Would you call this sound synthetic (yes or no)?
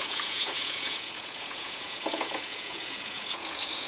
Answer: yes